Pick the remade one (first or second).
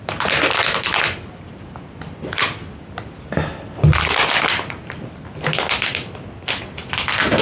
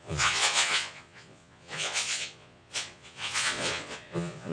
second